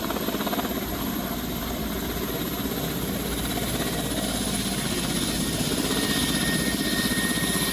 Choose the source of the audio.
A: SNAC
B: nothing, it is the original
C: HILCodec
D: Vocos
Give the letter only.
B